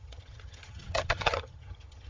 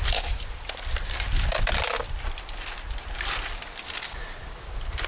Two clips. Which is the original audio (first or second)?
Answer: second